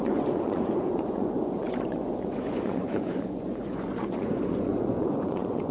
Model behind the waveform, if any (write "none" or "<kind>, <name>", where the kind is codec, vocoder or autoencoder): vocoder, Vocos